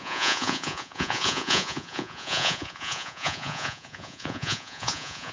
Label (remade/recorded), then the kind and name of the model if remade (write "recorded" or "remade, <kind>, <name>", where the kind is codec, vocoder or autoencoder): remade, vocoder, Vocos